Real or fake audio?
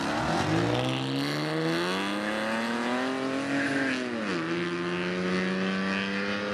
real